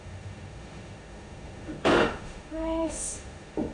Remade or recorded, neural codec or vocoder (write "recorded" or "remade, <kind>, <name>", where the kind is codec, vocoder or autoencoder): remade, autoencoder, DAC-VAE